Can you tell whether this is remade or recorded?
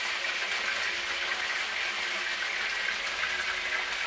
recorded